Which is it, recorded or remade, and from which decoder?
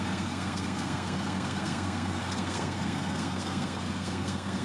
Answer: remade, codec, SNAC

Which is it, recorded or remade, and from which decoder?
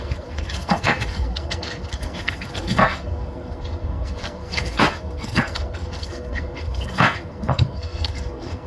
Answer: remade, codec, SNAC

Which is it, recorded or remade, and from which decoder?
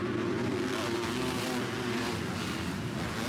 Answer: recorded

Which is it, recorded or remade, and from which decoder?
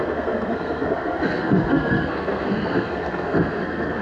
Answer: remade, codec, SNAC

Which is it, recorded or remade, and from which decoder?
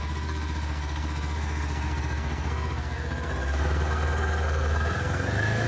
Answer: remade, codec, SNAC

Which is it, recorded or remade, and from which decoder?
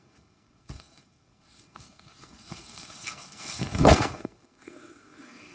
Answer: remade, codec, SNAC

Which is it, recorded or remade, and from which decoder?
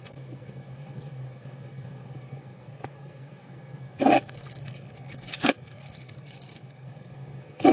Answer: remade, codec, SNAC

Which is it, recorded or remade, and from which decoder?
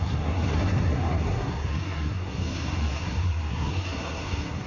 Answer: remade, codec, SNAC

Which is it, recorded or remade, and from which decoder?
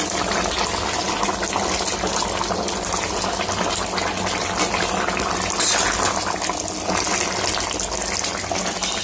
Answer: recorded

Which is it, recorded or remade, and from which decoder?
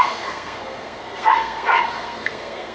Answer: remade, codec, SNAC